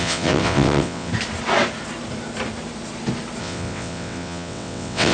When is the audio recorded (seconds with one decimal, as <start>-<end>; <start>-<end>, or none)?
1.1-3.4